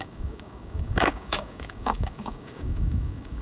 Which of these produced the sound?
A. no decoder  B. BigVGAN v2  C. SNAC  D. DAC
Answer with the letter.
D